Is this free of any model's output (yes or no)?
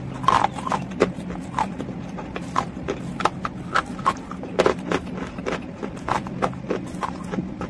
yes